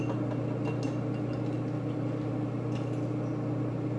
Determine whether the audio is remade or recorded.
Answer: recorded